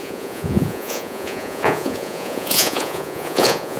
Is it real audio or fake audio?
fake